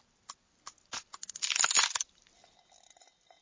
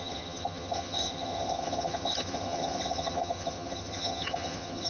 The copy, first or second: second